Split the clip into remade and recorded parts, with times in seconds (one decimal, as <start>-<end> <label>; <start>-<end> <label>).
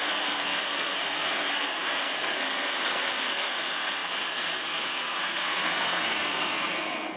0.0-7.2 remade